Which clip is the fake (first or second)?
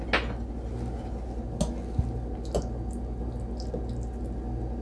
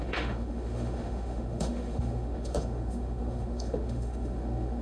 second